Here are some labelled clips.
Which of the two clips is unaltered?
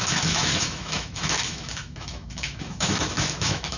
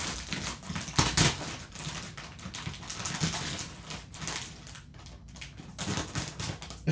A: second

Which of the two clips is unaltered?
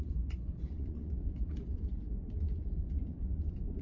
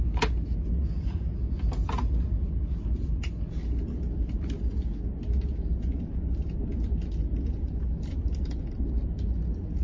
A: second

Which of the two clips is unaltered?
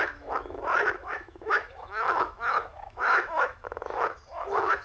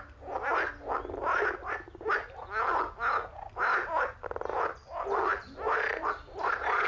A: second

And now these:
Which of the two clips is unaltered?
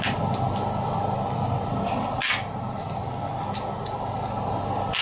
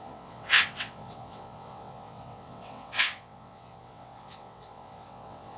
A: first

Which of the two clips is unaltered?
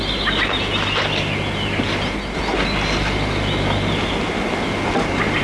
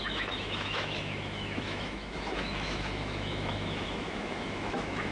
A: first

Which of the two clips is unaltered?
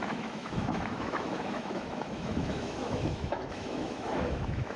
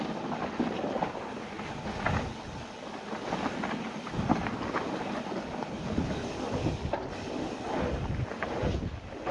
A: second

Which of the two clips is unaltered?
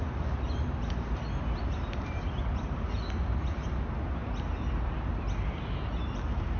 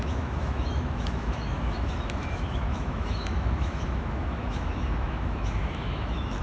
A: first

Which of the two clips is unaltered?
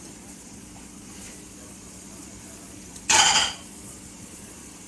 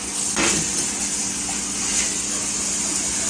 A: second